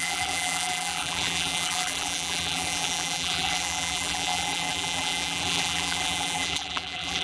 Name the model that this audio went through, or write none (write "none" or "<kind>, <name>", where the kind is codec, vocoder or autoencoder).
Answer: vocoder, BigVGAN v2